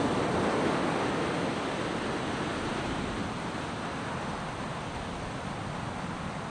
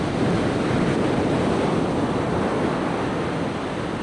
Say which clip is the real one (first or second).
first